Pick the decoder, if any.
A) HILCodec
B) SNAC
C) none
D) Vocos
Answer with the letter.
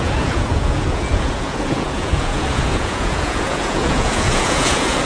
D